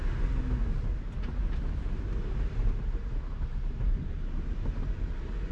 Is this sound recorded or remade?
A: recorded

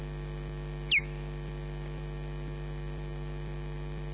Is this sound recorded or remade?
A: recorded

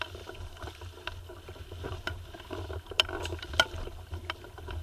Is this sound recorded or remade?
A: recorded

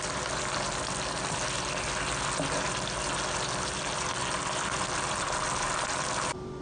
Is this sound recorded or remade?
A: recorded